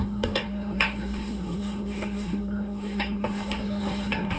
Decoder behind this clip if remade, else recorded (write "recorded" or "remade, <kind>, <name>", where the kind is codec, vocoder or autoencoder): remade, codec, SNAC